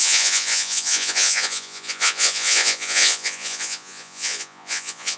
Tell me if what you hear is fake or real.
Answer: fake